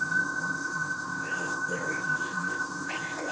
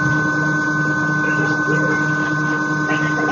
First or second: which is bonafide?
second